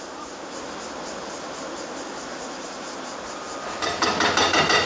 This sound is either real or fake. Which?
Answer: real